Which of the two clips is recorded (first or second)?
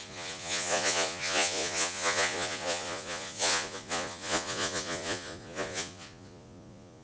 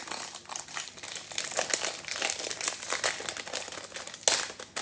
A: second